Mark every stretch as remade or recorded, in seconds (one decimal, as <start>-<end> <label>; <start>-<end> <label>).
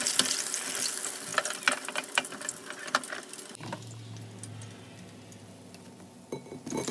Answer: 0.0-6.9 recorded